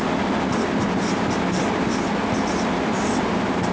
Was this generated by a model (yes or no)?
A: no